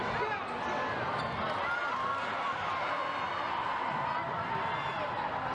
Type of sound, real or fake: real